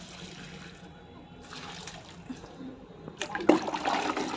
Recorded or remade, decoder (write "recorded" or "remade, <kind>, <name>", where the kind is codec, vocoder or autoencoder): recorded